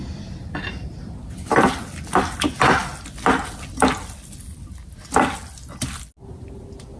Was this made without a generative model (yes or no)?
yes